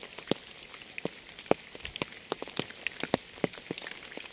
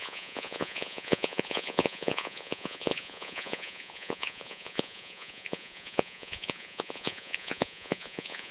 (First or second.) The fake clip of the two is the second